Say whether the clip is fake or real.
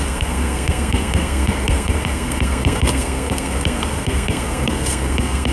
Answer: fake